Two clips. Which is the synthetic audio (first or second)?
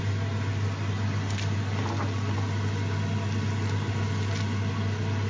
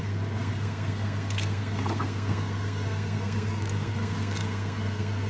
second